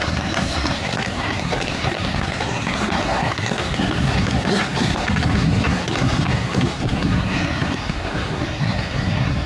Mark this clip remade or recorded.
remade